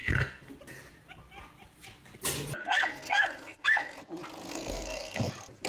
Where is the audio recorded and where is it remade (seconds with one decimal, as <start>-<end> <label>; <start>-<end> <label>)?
0.0-0.5 remade; 0.5-2.6 recorded; 2.6-4.0 remade; 4.0-4.5 recorded; 4.5-5.3 remade; 5.3-5.7 recorded